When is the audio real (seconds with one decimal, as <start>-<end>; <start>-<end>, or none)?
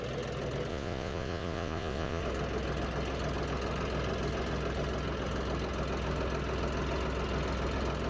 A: 0.0-0.7; 2.2-8.1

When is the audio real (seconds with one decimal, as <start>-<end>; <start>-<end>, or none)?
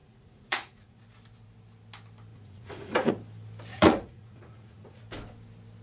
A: 1.0-2.3; 3.1-3.7; 5.0-5.8